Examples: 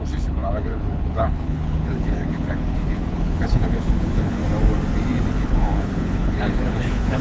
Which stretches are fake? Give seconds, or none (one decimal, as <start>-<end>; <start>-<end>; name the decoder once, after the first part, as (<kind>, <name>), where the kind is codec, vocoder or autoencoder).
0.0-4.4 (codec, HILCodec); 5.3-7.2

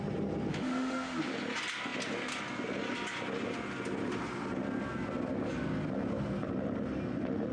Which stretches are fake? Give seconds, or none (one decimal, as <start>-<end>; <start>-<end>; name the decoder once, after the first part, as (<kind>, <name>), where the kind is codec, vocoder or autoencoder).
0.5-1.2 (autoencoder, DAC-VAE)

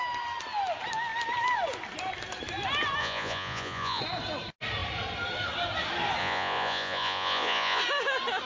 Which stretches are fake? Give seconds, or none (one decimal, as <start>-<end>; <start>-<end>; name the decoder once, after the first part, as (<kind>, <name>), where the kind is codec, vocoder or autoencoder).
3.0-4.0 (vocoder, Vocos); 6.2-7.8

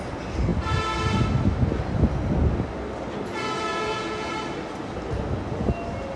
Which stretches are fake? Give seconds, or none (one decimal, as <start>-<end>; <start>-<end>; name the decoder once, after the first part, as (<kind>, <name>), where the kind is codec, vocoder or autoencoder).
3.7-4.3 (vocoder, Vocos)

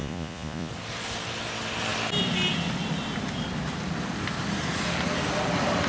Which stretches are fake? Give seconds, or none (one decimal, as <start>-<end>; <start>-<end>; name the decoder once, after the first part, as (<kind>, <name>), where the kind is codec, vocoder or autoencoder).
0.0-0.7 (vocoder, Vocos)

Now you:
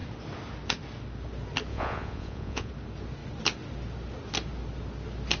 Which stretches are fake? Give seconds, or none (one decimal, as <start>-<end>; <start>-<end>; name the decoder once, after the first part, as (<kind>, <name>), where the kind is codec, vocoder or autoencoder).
1.7-2.7 (vocoder, Vocos)